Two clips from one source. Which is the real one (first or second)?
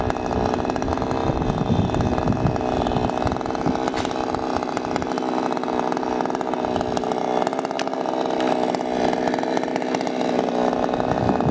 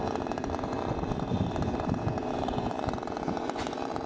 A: first